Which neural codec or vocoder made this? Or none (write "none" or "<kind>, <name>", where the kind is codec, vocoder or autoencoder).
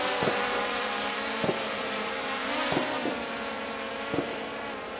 vocoder, BigVGAN v2